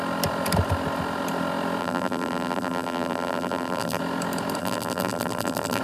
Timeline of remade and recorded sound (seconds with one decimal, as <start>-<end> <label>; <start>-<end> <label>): 0.0-1.8 recorded; 1.8-4.0 remade; 4.0-4.6 recorded; 4.6-5.8 remade